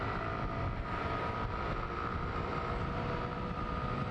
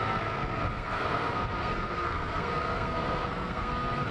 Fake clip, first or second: second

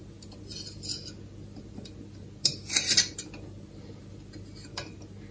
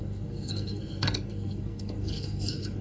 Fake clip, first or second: second